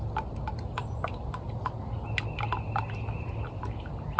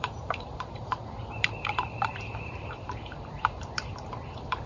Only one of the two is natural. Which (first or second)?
first